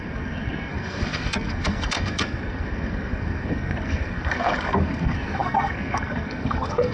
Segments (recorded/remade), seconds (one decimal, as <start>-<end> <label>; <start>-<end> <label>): 0.0-6.9 remade